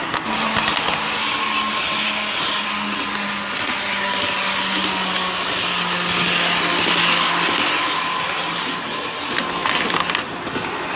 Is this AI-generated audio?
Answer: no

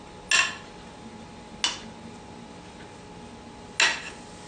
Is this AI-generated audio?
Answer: no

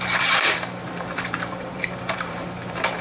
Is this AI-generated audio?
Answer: yes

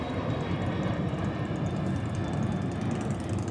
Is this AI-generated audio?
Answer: yes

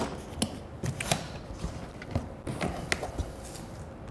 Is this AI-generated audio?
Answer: no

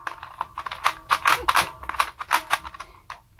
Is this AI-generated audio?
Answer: no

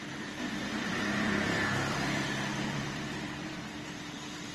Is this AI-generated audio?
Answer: yes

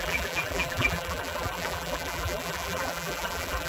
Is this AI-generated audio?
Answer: yes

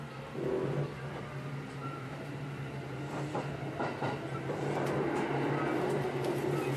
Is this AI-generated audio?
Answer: no